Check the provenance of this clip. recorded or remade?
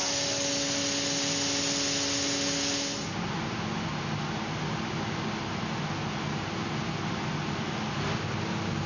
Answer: recorded